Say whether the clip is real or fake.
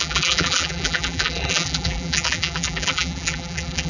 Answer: fake